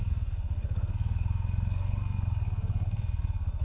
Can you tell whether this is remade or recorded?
remade